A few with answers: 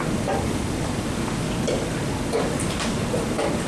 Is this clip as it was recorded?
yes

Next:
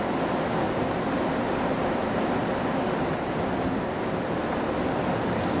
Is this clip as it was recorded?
yes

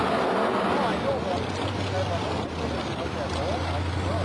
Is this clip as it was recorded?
yes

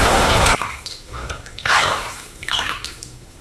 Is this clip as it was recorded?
no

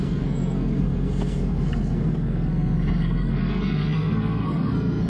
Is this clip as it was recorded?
no